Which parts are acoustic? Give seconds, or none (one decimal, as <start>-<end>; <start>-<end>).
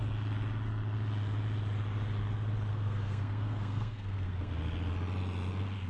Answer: 0.0-2.7; 4.5-5.9